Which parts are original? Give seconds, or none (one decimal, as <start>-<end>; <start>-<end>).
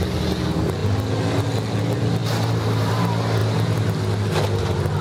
0.0-5.0